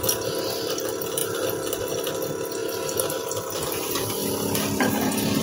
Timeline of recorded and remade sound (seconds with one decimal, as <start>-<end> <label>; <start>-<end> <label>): 0.0-4.2 recorded; 4.2-5.4 remade